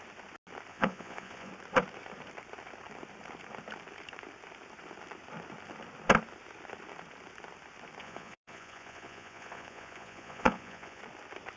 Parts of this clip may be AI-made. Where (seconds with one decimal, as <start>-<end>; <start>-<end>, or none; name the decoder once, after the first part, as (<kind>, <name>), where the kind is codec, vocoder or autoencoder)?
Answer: 0.7-1.5 (vocoder, Vocos); 8.0-11.0